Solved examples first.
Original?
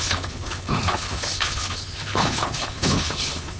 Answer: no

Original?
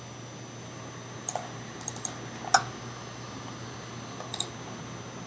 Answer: yes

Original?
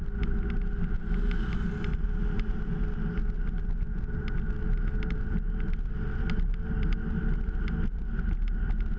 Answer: yes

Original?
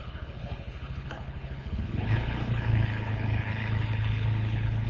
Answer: no